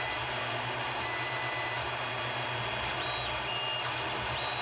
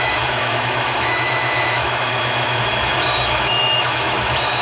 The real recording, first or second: first